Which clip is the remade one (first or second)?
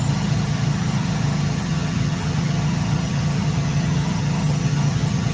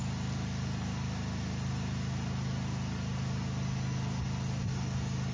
first